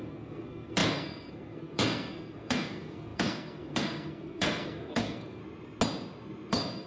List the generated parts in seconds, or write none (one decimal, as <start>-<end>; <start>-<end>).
0.0-5.4; 6.5-6.9